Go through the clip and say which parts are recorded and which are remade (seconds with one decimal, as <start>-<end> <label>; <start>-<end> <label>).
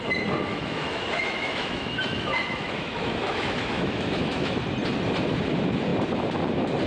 0.0-0.5 recorded; 0.5-4.6 remade; 4.6-6.9 recorded